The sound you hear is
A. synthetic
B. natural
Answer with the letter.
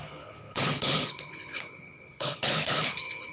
A